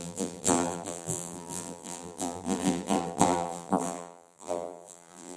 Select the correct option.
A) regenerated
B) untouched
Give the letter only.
A